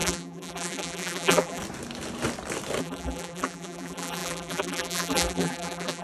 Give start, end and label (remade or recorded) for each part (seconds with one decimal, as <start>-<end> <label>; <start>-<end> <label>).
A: 0.0-1.6 remade; 1.6-2.8 recorded; 2.8-6.0 remade